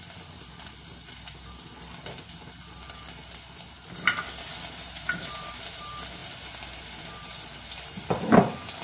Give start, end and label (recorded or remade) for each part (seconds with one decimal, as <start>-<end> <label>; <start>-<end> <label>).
0.0-8.8 recorded